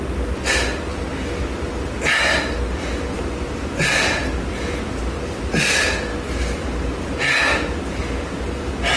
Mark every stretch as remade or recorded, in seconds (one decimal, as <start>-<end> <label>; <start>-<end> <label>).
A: 0.0-0.9 recorded; 0.9-1.7 remade; 1.7-9.0 recorded